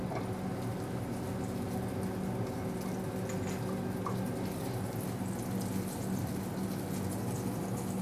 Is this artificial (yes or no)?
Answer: no